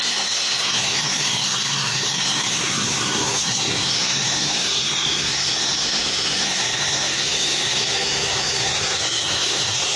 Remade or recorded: remade